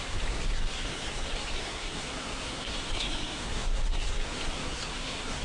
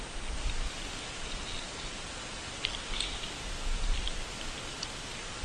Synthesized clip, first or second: first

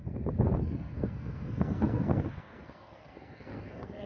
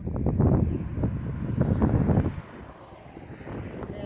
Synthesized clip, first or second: first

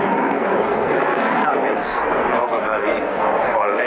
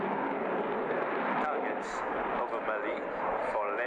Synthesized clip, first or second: first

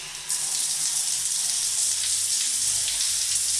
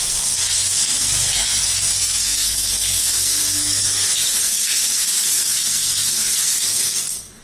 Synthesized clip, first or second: second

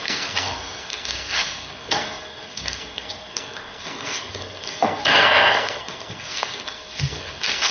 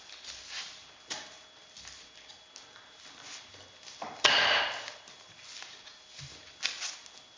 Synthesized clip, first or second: first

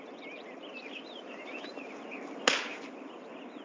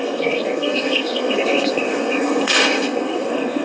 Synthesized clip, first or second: second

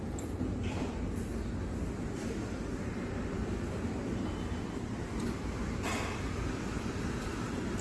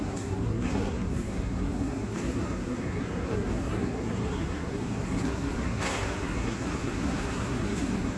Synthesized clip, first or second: second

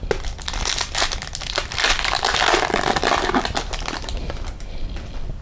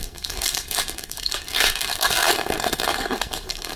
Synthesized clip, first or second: second